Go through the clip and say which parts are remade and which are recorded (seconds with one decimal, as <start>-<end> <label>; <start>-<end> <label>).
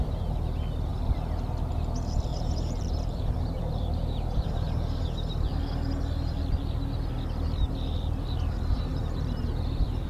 0.0-2.3 recorded; 2.3-5.0 remade; 5.0-8.9 recorded; 8.9-10.1 remade